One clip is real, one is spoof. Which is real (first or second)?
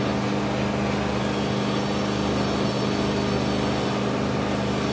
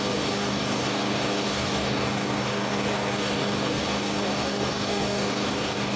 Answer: first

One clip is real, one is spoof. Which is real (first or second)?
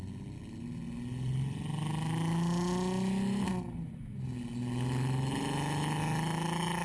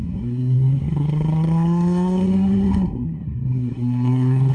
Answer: first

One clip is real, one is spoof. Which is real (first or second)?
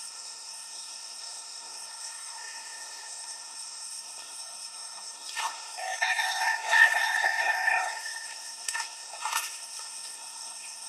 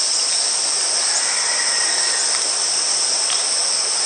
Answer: second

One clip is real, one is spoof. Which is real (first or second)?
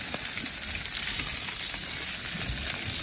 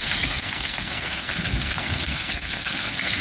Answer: first